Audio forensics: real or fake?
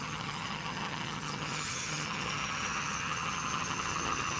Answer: fake